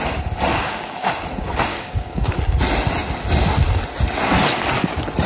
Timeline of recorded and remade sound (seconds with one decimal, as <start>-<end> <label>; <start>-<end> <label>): 0.0-0.5 recorded; 0.5-1.1 remade; 1.1-1.7 recorded; 1.7-2.3 remade; 2.3-5.3 recorded